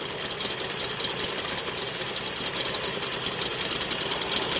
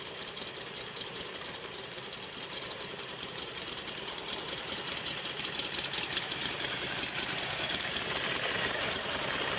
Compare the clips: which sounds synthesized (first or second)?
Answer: second